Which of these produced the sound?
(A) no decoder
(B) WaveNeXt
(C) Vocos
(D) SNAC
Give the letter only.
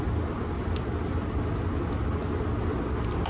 A